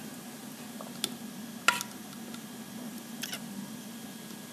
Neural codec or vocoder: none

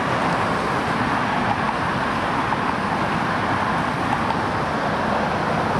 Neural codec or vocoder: none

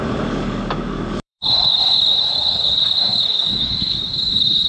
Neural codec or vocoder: codec, DAC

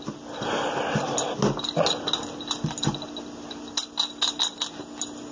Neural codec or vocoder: none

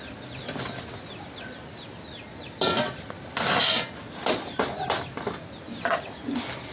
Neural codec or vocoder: none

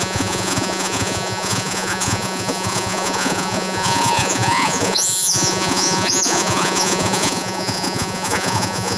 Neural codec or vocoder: vocoder, Vocos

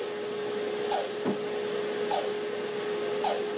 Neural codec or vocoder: none